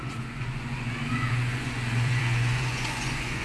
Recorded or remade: remade